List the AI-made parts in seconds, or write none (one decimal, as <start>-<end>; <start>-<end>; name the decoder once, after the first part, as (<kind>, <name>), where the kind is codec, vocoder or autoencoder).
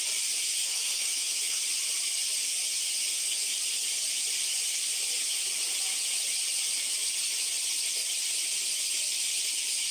0.6-1.6 (autoencoder, DAC-VAE); 3.1-3.6